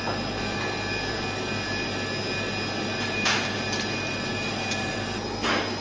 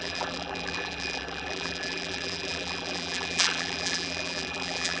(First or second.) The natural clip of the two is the first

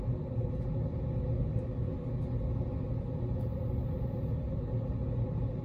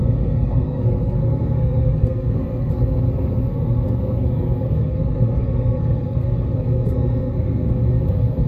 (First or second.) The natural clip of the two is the first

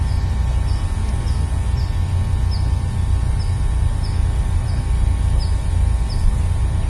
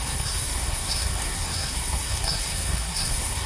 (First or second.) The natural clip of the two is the first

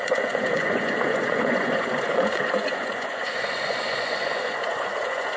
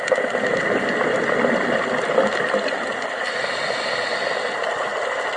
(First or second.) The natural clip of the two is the second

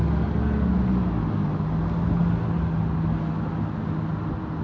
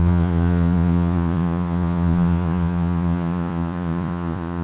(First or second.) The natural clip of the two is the first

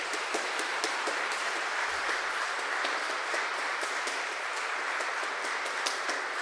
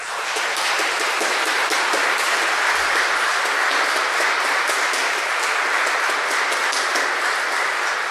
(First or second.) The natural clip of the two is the second